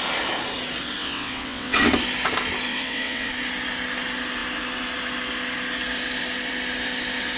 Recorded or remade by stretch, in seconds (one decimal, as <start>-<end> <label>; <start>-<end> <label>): 0.0-1.0 recorded; 1.0-1.9 remade; 1.9-2.7 recorded; 2.7-3.3 remade; 3.3-7.4 recorded